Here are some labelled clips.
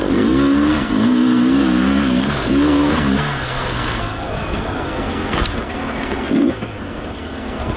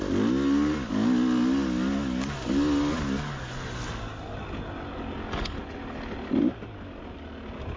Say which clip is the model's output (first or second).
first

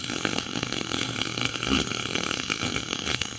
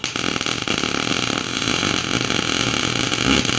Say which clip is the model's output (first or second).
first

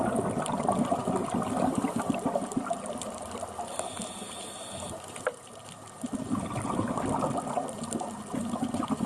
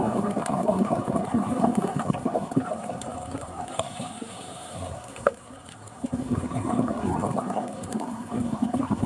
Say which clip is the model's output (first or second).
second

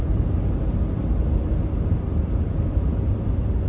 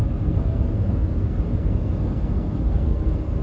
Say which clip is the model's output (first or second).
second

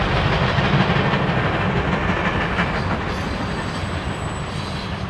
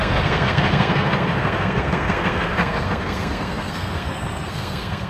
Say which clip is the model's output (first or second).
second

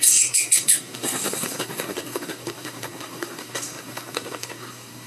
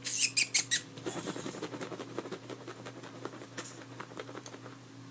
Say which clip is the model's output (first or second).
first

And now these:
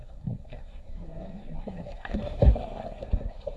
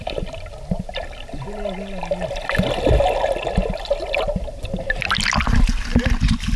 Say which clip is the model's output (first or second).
first